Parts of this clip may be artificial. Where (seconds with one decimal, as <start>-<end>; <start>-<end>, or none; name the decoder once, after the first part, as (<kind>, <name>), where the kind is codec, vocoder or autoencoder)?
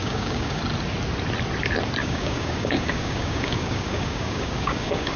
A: 0.0-0.6 (codec, DAC); 2.0-5.2